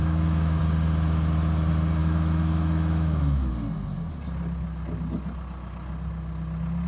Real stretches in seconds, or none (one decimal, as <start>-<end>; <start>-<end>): 0.6-2.0; 3.5-6.9